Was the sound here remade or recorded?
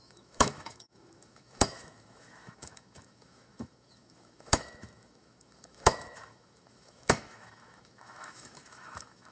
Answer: remade